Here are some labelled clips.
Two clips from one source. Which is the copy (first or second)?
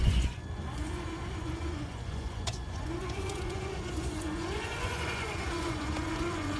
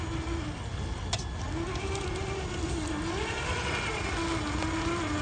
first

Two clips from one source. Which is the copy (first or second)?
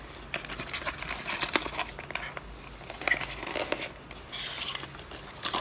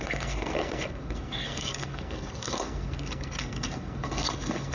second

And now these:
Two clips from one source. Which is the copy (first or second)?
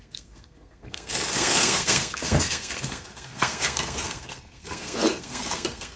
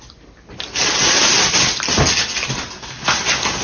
first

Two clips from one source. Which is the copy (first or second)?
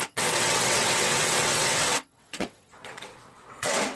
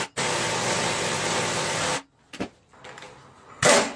first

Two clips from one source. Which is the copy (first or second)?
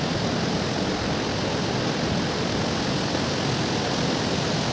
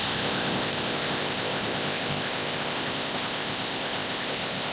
second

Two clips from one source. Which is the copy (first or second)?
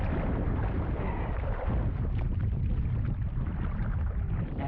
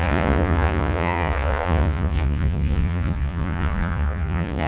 second